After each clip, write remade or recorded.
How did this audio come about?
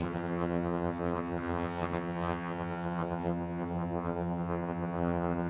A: remade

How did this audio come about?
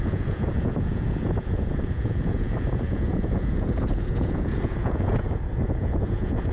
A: remade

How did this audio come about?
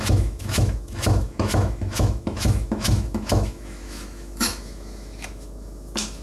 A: remade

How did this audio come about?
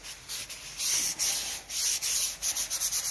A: recorded